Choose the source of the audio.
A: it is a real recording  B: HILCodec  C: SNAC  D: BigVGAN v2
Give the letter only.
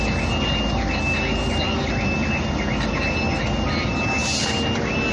A